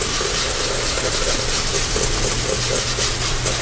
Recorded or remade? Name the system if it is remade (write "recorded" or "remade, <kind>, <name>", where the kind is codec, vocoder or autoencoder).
recorded